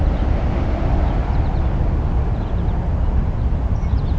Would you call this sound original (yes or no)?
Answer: yes